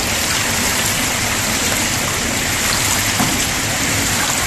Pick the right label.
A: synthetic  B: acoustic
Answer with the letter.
B